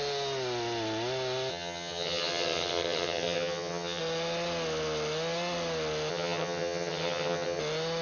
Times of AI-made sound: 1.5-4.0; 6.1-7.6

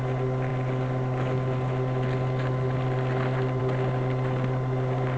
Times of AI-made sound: none

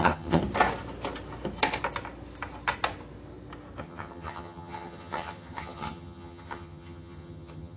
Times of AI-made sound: 0.0-0.4; 3.8-7.8

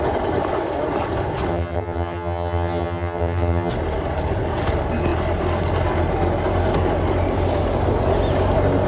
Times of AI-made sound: 1.5-3.7

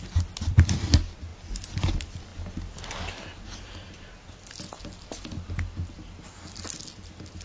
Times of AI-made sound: none

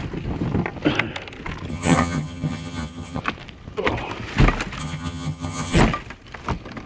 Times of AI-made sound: 1.7-3.2; 4.8-5.8